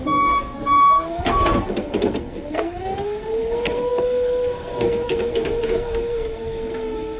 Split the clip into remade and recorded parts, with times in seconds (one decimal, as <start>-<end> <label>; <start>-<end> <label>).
0.0-7.2 remade